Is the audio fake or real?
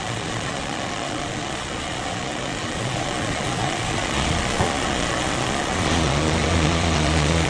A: fake